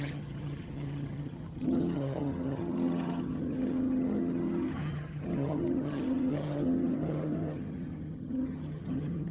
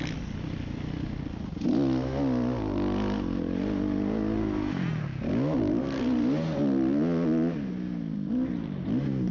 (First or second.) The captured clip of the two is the second